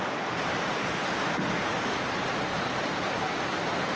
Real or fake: real